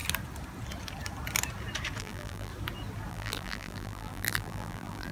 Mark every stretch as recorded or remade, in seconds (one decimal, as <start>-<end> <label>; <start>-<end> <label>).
0.0-2.0 recorded; 2.0-2.5 remade; 2.5-3.1 recorded; 3.1-5.1 remade